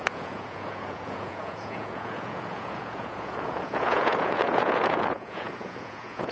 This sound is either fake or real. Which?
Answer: fake